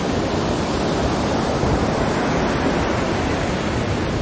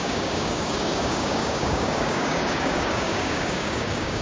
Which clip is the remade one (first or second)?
second